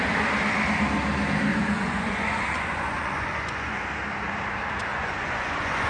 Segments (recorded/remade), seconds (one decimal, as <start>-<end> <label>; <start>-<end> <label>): 0.0-1.5 recorded; 1.5-3.8 remade; 3.8-4.9 recorded; 4.9-5.9 remade

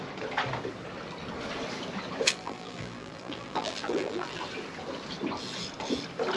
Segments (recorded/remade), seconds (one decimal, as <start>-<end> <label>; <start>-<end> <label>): 0.0-2.3 recorded; 2.3-4.4 remade; 4.4-6.4 recorded

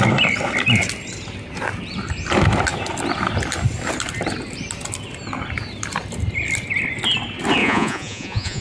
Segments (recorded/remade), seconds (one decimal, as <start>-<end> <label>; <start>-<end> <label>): 0.0-7.6 recorded; 7.6-8.6 remade

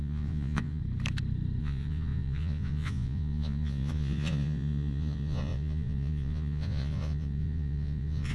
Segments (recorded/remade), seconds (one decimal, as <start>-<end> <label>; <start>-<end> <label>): 0.0-0.8 remade; 0.8-1.6 recorded; 1.6-8.3 remade